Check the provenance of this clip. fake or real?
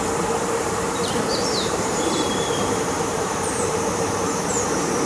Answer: fake